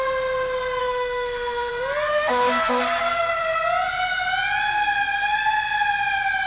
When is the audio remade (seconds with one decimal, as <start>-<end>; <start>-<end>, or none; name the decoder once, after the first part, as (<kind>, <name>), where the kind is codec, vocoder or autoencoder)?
0.8-1.7 (autoencoder, DAC-VAE); 2.1-2.7

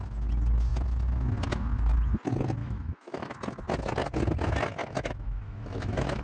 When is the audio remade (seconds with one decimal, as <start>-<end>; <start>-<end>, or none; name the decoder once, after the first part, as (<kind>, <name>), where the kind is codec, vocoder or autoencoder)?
2.6-3.3 (autoencoder, DAC-VAE); 4.8-6.2

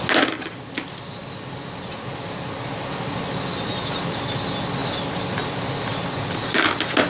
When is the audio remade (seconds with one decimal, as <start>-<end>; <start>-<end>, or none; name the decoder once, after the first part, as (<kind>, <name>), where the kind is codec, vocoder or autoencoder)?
none

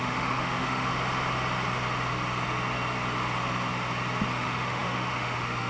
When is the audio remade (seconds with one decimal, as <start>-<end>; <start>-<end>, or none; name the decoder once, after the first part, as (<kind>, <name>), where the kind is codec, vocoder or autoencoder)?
0.0-0.9 (autoencoder, DAC-VAE); 4.3-5.7

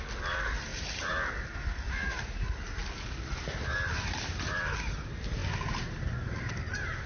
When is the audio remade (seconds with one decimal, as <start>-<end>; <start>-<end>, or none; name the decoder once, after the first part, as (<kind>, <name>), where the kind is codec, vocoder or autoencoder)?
none

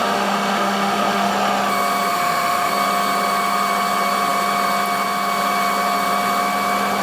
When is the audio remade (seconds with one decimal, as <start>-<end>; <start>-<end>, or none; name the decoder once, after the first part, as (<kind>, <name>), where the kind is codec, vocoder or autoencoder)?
0.0-1.3 (autoencoder, DAC-VAE); 2.1-2.7

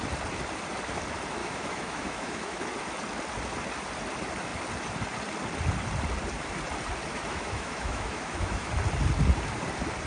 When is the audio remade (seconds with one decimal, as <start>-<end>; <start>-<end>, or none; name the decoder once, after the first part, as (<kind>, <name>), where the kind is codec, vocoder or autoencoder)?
1.4-2.6 (autoencoder, DAC-VAE); 7.1-8.7

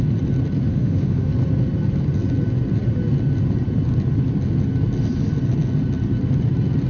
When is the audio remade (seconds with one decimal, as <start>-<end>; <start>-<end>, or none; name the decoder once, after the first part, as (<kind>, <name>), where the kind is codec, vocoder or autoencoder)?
0.7-1.3 (autoencoder, DAC-VAE)